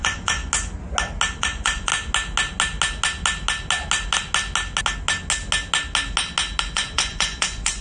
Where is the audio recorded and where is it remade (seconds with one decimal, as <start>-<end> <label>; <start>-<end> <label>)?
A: 0.0-0.4 remade; 0.4-1.4 recorded; 1.4-1.9 remade; 1.9-6.6 recorded; 6.6-7.8 remade